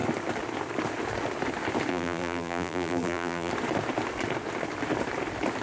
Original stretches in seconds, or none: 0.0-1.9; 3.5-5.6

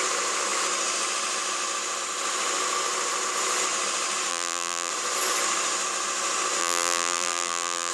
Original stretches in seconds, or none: 0.0-4.3; 4.9-6.6

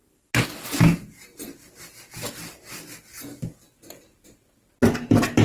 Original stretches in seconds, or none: 0.0-5.4

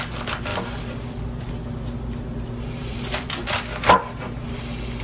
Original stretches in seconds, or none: 0.0-0.5; 1.5-2.8; 3.4-5.0

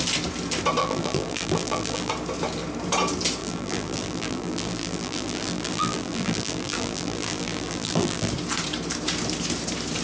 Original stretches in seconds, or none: 0.0-0.8; 2.1-3.4; 8.3-10.0